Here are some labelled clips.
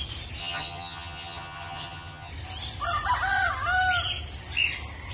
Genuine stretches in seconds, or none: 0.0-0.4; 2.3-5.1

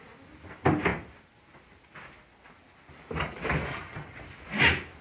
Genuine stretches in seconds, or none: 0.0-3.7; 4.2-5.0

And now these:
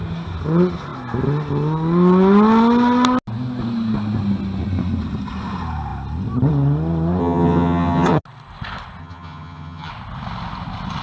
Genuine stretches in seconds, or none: 0.0-7.2; 8.2-9.0; 9.9-11.0